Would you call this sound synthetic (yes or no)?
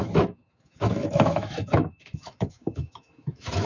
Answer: yes